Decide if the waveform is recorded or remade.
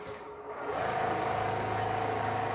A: remade